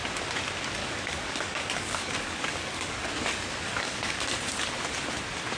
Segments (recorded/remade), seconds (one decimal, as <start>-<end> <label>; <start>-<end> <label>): 0.0-0.8 recorded; 0.8-4.2 remade; 4.2-5.6 recorded